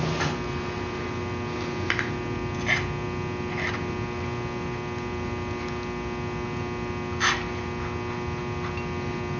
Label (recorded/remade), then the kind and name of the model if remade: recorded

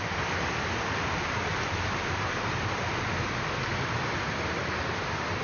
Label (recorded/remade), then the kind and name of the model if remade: recorded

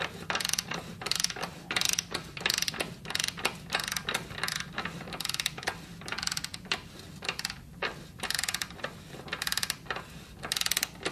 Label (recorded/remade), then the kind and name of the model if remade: recorded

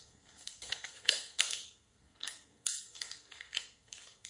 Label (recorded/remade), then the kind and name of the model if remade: remade, codec, SNAC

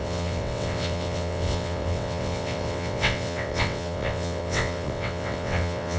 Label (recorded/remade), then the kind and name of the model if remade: remade, vocoder, WaveNeXt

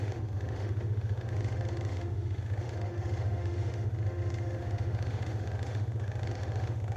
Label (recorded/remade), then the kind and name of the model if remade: remade, autoencoder, DAC-VAE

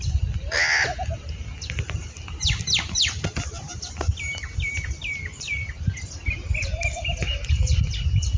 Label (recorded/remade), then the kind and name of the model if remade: recorded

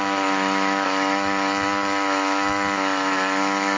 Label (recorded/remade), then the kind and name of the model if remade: remade, autoencoder, DAC-VAE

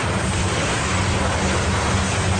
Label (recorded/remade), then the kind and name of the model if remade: recorded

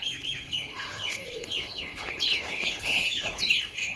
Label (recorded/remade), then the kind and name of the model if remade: remade, codec, HILCodec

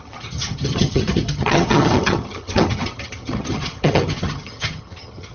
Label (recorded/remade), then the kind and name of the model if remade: remade, vocoder, HiFi-GAN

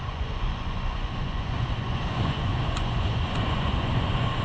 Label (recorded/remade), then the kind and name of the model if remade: remade, vocoder, Vocos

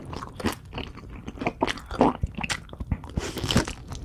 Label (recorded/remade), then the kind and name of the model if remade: recorded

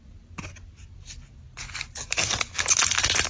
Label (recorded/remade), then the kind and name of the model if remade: recorded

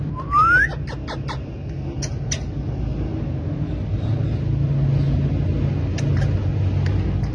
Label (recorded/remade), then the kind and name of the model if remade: recorded